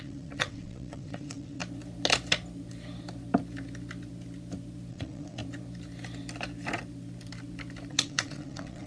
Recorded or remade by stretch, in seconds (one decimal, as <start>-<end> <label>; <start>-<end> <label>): 0.0-1.6 remade; 1.6-4.9 recorded; 4.9-5.4 remade; 5.4-7.9 recorded; 7.9-8.9 remade